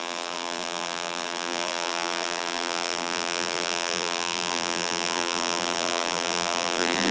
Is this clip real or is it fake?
fake